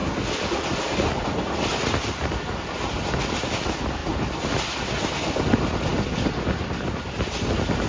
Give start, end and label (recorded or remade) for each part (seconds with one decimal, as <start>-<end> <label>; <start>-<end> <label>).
0.0-7.9 recorded